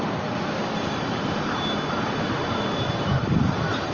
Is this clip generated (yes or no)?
no